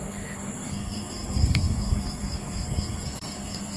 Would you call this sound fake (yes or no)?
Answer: yes